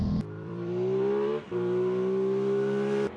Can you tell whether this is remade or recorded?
remade